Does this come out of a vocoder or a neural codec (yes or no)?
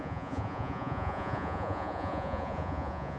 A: yes